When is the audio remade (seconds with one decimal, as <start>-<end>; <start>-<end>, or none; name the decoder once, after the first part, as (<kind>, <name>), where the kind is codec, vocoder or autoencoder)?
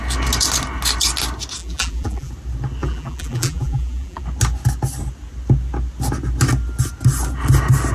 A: 1.6-2.3 (vocoder, BigVGAN v2); 2.8-4.2